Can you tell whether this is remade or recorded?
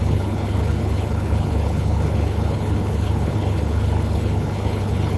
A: remade